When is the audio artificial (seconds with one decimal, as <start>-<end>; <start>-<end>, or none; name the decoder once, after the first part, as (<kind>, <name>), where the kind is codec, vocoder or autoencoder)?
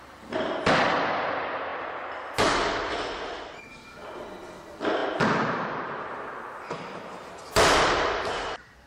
none